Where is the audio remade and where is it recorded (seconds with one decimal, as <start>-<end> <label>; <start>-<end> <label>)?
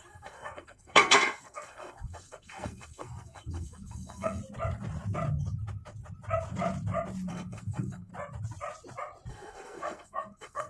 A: 0.0-4.4 remade; 4.4-7.3 recorded; 7.3-8.1 remade; 8.1-9.3 recorded; 9.3-10.7 remade